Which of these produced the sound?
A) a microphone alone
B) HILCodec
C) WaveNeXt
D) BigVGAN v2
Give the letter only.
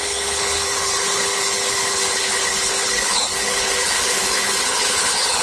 B